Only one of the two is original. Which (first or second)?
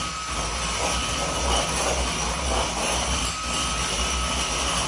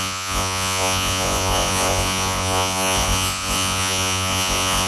first